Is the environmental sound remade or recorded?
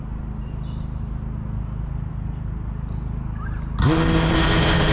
recorded